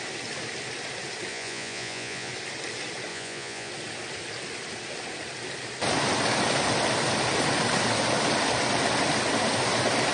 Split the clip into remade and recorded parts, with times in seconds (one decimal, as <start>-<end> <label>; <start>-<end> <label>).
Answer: 0.0-1.3 recorded; 1.3-2.3 remade; 2.3-3.1 recorded; 3.1-3.7 remade; 3.7-10.1 recorded